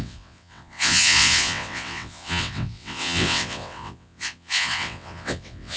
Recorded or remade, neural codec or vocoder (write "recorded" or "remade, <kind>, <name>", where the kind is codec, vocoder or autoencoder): remade, vocoder, WaveNeXt